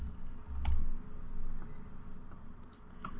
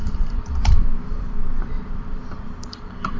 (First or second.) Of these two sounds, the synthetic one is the second